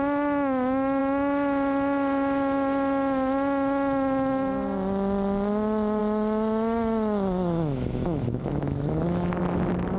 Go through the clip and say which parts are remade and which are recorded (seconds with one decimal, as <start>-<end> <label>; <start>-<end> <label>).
0.0-6.0 recorded; 6.0-9.4 remade; 9.4-10.0 recorded